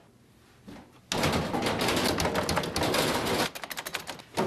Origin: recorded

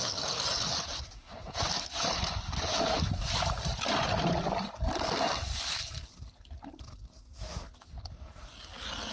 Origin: recorded